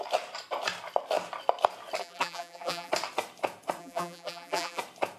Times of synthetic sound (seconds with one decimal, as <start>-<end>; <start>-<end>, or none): 2.0-2.9; 3.8-4.8